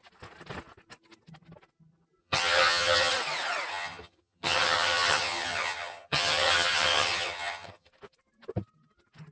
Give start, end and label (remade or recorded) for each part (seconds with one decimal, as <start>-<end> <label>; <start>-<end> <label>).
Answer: 0.0-2.2 recorded; 2.2-3.1 remade; 3.1-3.7 recorded; 3.7-7.9 remade; 7.9-9.3 recorded

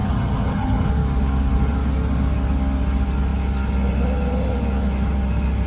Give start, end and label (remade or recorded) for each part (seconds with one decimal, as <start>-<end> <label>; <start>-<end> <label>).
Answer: 0.0-0.9 remade; 0.9-5.7 recorded

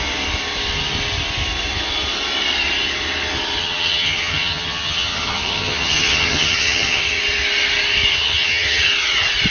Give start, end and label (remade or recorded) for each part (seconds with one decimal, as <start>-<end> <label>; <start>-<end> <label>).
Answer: 0.0-3.6 recorded; 3.6-7.2 remade; 7.2-8.1 recorded; 8.1-8.9 remade; 8.9-9.5 recorded

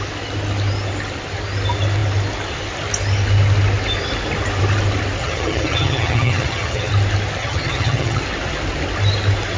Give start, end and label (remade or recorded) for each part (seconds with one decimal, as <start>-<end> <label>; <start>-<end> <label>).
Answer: 0.0-5.2 recorded; 5.2-6.9 remade; 6.9-7.4 recorded; 7.4-8.2 remade; 8.2-9.6 recorded